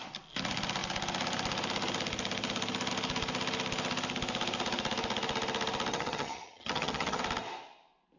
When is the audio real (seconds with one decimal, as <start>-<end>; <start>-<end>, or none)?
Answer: 0.0-5.9; 7.2-8.2